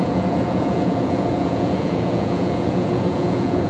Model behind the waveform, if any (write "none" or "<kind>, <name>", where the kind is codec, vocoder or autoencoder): vocoder, Vocos